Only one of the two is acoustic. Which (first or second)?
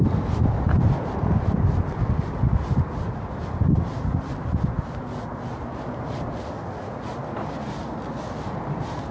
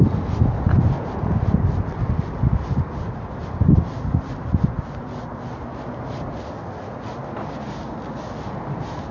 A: second